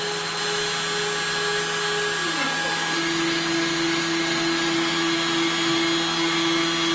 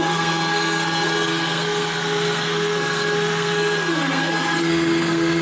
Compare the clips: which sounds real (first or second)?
first